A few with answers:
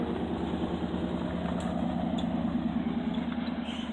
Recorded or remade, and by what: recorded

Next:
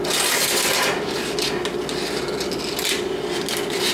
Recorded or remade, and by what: recorded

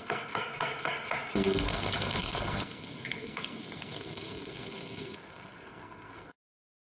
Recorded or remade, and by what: remade, codec, SNAC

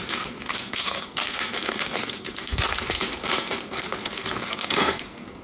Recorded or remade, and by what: remade, codec, SNAC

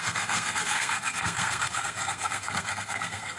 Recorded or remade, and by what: remade, codec, SNAC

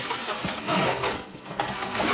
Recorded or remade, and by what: remade, codec, SNAC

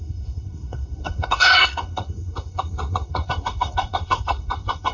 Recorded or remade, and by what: remade, codec, SNAC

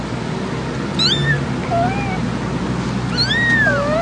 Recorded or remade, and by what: recorded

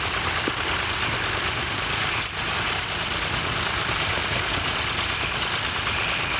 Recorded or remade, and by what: recorded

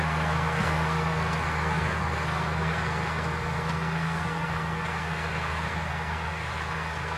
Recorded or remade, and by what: remade, codec, SNAC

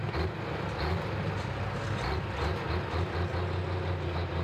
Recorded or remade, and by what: recorded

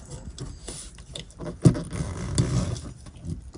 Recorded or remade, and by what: recorded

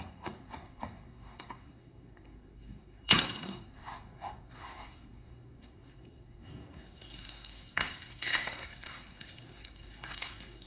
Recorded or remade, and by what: remade, codec, SNAC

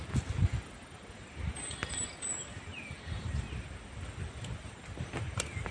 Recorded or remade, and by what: recorded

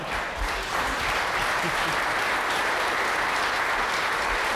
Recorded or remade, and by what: recorded